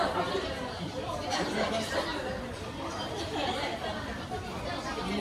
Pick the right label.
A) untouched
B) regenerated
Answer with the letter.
B